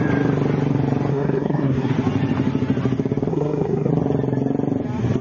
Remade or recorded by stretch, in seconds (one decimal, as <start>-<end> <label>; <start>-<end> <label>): 0.0-1.1 recorded; 1.1-1.9 remade; 1.9-3.3 recorded; 3.3-3.9 remade; 3.9-5.2 recorded